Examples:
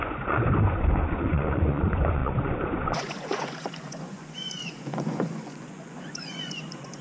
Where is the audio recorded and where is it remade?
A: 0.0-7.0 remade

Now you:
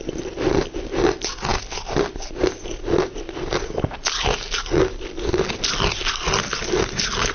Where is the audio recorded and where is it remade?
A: 0.0-7.3 recorded

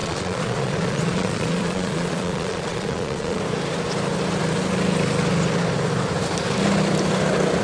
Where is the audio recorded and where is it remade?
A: 0.0-3.4 remade; 3.4-7.6 recorded